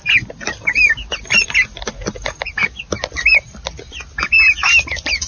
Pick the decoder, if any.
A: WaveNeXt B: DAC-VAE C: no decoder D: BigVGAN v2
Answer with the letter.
C